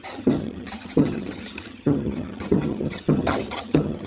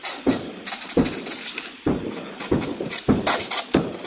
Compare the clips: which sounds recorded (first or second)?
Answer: second